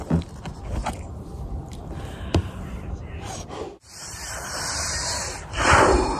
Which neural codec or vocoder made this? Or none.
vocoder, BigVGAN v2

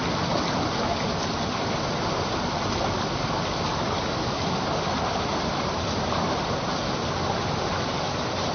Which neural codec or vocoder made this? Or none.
none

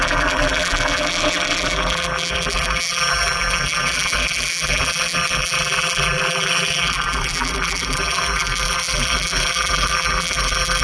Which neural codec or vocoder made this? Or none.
vocoder, BigVGAN v2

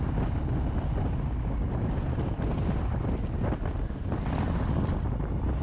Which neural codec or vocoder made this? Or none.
none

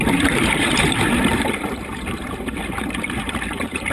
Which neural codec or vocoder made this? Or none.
vocoder, BigVGAN v2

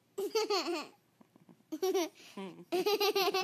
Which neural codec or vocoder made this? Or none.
vocoder, BigVGAN v2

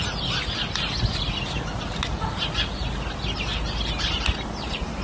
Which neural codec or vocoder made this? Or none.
none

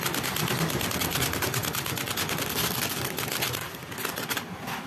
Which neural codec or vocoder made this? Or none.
none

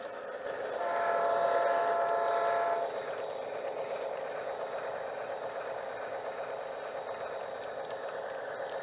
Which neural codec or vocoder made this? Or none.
none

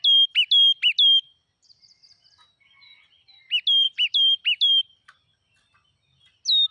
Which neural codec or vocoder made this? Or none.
none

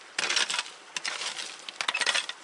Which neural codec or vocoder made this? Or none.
none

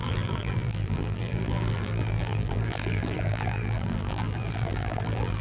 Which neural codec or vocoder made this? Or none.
vocoder, BigVGAN v2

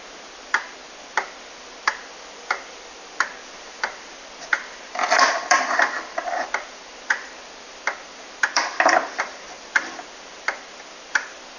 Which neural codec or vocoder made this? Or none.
vocoder, BigVGAN v2